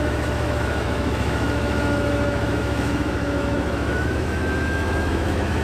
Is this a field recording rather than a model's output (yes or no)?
no